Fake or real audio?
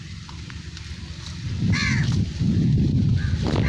real